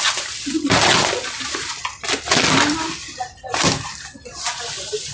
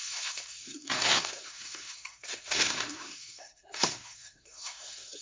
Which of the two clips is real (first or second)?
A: first